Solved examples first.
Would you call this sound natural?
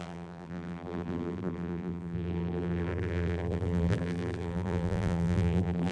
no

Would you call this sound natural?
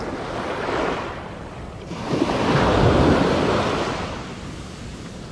yes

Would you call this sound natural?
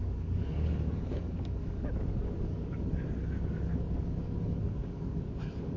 no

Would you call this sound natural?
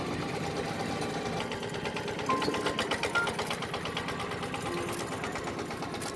yes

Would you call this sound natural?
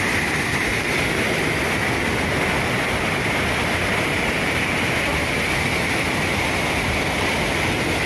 yes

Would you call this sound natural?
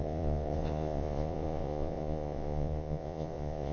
no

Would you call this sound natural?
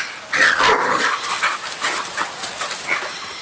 yes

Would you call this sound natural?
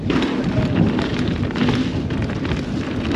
yes